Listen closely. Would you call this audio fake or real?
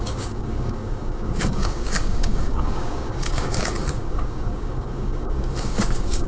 fake